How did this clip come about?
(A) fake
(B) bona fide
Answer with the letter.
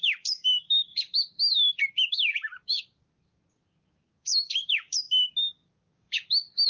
A